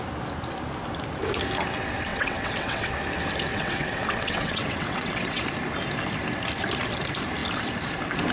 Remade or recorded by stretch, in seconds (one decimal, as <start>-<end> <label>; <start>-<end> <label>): 0.0-2.1 recorded; 2.1-2.9 remade; 2.9-3.5 recorded; 3.5-5.4 remade; 5.4-8.3 recorded